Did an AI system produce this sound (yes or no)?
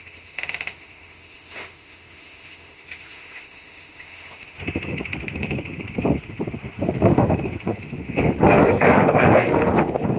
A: yes